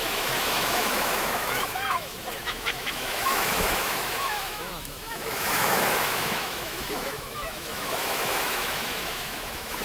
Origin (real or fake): fake